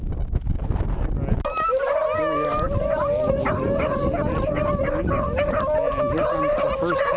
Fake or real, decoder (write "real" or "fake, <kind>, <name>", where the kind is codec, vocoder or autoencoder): real